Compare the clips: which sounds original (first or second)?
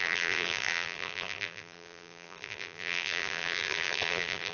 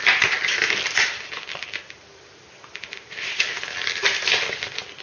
second